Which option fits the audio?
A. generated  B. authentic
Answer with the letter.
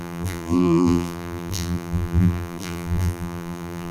A